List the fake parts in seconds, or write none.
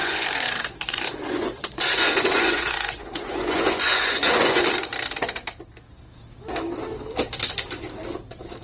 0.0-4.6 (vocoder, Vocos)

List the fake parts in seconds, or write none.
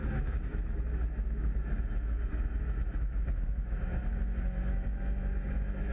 0.0-5.9 (autoencoder, DAC-VAE)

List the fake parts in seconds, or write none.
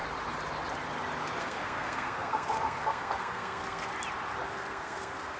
1.4-3.9 (codec, SNAC); 4.5-5.4